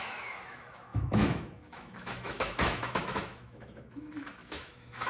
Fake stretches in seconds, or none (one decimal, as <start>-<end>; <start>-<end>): 0.0-5.1